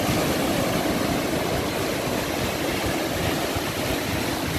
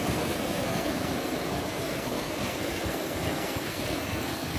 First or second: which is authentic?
first